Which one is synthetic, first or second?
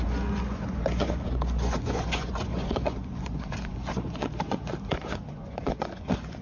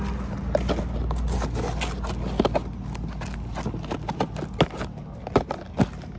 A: first